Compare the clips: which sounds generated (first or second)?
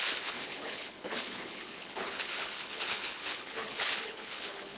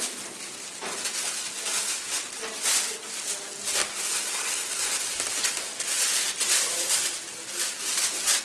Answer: first